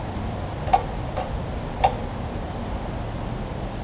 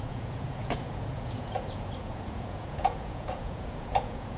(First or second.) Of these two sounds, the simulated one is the second